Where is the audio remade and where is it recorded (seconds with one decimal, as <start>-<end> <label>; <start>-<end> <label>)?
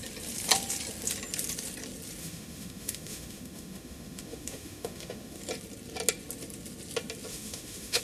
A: 0.0-2.2 recorded; 2.2-5.4 remade; 5.4-7.3 recorded; 7.3-8.0 remade